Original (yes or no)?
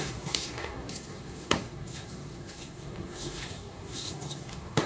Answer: no